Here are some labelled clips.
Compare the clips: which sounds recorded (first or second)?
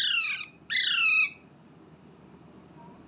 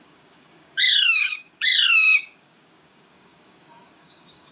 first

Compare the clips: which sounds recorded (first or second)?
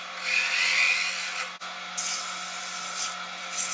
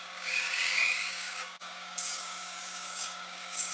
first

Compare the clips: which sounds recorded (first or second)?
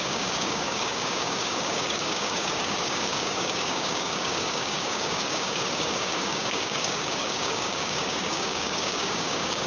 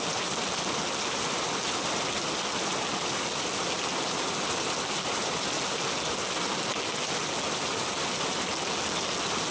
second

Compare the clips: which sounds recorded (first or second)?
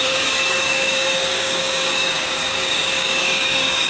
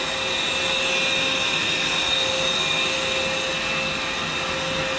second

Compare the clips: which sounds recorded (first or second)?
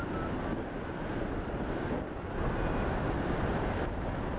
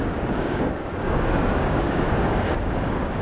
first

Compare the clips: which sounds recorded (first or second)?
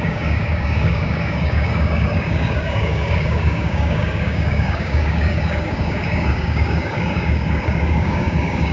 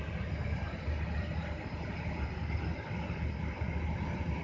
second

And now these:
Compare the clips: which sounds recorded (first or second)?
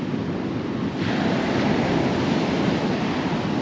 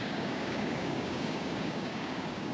first